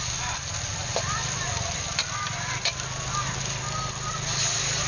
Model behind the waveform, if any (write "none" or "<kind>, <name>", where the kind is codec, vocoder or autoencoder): none